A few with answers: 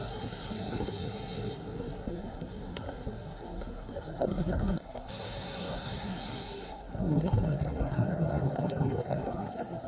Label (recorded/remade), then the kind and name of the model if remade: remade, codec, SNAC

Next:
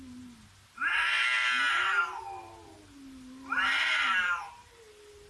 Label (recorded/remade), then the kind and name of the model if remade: recorded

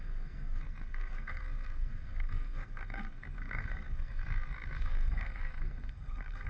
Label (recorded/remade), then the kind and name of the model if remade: remade, codec, SNAC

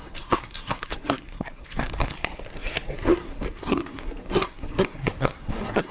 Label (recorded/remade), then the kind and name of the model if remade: remade, codec, SNAC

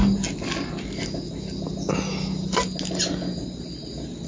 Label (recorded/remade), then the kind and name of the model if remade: recorded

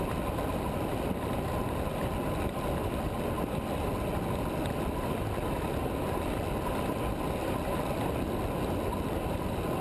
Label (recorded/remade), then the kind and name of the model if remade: recorded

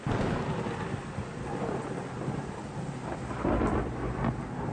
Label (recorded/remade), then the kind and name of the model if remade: recorded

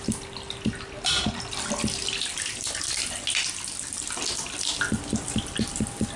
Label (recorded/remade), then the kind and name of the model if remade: recorded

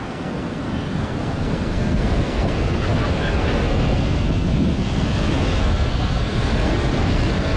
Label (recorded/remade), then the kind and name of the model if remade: remade, codec, SNAC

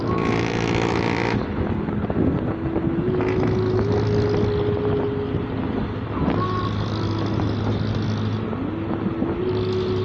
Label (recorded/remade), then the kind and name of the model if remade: recorded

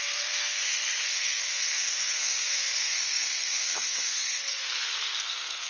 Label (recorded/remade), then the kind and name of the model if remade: remade, codec, SNAC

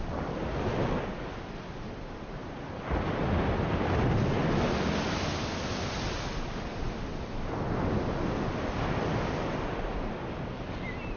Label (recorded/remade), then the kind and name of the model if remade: recorded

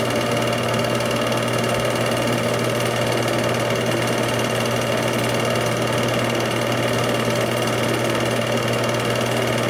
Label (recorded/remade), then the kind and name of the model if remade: recorded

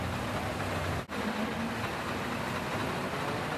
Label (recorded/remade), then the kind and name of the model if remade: recorded